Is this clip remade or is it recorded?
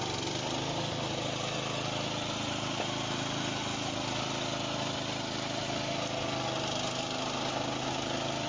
recorded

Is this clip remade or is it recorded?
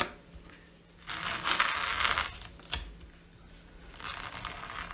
recorded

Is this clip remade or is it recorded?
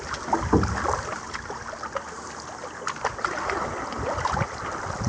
recorded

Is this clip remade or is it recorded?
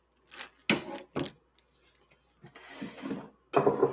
recorded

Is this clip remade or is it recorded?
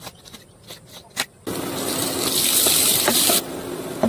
recorded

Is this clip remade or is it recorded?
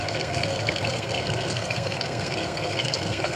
remade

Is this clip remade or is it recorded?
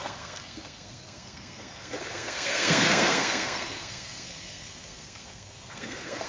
remade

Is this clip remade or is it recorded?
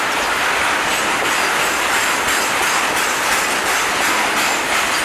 recorded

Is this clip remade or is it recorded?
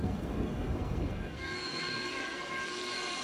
remade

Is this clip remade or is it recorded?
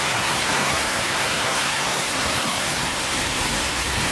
remade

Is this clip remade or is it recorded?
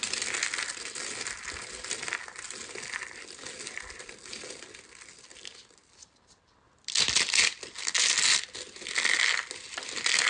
recorded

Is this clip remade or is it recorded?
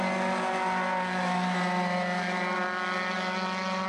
recorded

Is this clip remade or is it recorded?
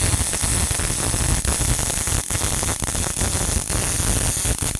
recorded